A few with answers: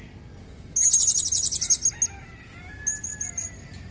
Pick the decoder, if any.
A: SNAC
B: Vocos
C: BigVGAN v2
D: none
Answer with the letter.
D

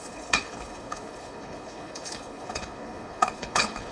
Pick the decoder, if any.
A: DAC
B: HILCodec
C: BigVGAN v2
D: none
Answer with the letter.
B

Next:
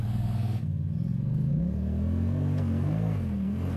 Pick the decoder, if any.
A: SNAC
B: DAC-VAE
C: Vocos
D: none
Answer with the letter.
A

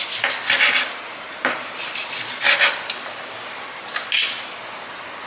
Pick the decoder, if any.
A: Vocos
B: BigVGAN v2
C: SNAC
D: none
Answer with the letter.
D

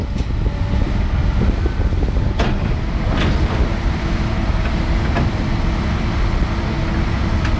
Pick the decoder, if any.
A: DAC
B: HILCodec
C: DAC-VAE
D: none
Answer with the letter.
D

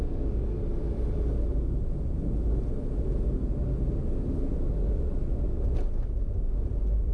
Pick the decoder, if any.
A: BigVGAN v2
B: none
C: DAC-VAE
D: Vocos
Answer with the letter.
B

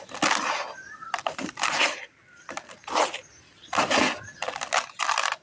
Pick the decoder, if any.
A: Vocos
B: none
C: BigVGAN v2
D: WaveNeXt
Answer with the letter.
B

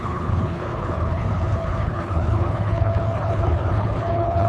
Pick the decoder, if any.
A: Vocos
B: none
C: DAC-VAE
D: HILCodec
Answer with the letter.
D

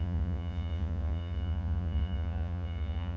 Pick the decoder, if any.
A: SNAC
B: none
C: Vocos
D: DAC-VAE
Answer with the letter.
C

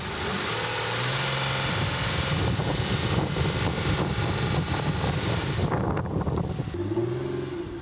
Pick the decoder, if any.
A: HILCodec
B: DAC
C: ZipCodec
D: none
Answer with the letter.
D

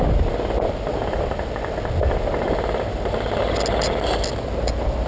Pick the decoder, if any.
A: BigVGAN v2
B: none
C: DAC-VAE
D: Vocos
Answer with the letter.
B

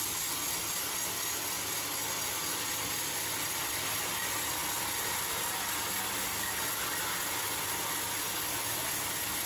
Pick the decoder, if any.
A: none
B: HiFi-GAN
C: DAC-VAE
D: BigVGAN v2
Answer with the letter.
A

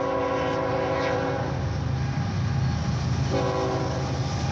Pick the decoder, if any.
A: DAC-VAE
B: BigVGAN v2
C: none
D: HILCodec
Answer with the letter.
C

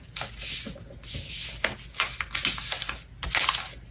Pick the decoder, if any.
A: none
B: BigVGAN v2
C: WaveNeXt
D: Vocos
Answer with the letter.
A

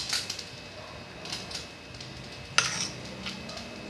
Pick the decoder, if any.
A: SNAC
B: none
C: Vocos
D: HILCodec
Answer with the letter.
B